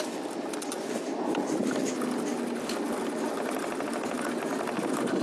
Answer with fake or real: real